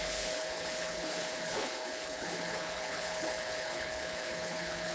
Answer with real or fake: fake